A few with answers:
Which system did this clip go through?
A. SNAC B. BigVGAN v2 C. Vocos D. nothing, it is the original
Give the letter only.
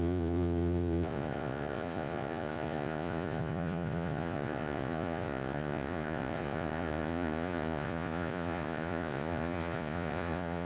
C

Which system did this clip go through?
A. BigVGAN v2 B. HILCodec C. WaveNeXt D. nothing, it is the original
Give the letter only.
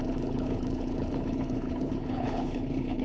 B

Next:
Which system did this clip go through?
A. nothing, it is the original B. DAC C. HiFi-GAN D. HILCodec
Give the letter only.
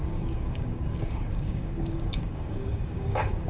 B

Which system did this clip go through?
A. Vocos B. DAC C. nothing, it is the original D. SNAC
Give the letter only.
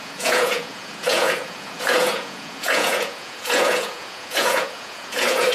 A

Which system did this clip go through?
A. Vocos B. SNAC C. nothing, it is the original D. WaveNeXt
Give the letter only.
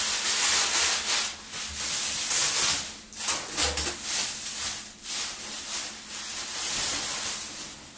C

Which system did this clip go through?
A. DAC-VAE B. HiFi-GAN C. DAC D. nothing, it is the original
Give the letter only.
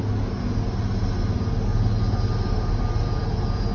D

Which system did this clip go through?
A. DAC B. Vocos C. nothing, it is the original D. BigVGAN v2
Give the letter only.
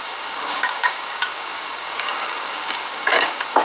A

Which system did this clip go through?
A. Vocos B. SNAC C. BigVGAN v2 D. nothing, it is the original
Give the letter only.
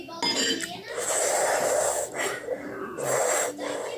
D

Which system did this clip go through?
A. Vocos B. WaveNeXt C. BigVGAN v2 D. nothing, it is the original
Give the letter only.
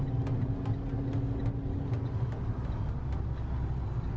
D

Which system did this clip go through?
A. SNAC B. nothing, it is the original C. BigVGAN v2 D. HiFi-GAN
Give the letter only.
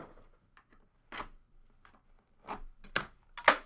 B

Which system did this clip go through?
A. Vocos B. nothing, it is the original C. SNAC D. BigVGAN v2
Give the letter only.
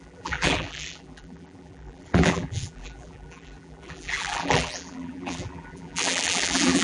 D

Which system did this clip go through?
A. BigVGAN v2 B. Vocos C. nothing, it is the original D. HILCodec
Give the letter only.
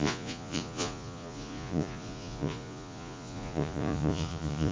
B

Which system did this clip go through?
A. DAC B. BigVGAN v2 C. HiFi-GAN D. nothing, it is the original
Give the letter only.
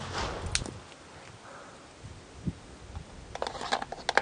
D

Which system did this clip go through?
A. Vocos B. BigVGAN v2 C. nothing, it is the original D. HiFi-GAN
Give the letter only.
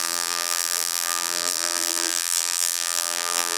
B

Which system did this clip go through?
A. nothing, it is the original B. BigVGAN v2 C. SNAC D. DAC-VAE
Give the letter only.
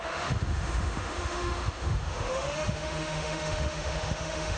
D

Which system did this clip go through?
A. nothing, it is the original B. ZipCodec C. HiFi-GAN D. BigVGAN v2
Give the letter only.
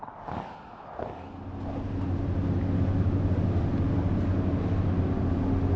A